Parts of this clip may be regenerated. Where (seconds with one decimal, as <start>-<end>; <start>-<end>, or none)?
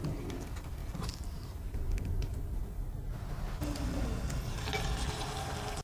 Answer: 0.8-2.6